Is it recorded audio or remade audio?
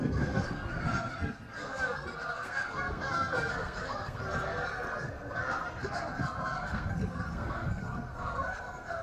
remade